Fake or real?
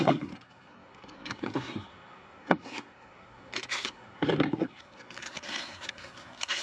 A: fake